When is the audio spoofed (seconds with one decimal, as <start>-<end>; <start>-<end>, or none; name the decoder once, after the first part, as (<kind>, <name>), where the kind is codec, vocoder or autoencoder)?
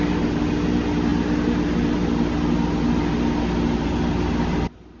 none